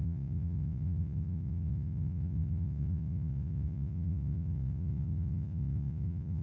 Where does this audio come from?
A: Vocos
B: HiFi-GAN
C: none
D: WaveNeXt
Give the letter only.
A